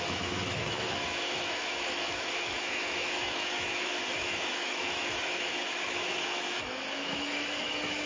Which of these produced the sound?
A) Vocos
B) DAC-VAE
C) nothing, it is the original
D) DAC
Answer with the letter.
B